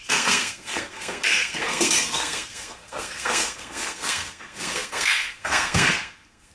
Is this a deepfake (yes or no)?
yes